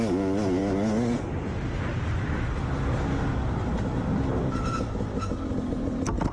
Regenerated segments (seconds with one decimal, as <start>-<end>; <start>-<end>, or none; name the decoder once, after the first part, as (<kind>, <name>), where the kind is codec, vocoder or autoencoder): none